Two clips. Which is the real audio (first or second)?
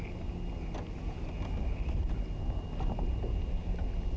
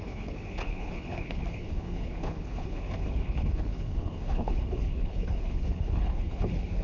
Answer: first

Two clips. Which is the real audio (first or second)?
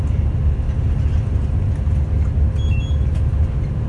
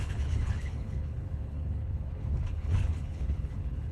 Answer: first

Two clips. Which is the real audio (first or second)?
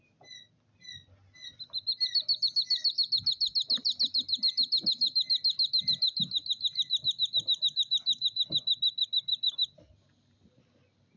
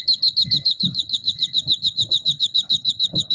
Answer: first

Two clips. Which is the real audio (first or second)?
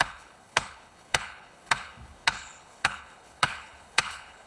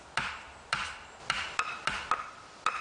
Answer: second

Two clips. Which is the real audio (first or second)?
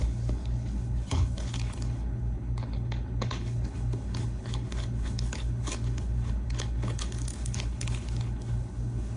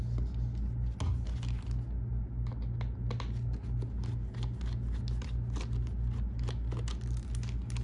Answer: second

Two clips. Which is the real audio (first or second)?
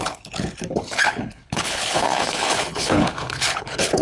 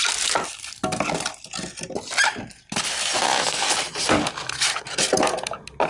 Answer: second